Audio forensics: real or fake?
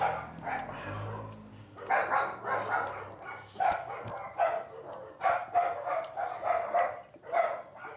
real